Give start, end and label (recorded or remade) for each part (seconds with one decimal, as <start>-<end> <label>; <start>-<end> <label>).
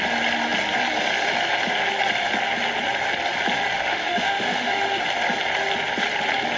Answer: 0.0-3.7 recorded; 3.7-5.0 remade; 5.0-6.6 recorded